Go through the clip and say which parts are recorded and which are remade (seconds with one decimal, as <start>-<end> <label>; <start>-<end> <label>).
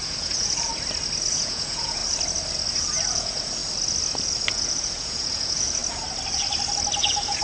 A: 0.0-0.7 remade; 0.7-1.3 recorded; 1.3-2.0 remade; 2.0-3.1 recorded; 3.1-3.6 remade; 3.6-4.5 recorded; 4.5-5.8 remade; 5.8-7.0 recorded; 7.0-7.4 remade